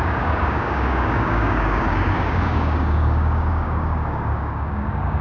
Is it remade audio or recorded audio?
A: remade